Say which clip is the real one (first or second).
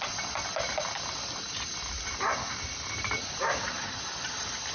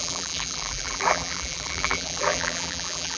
first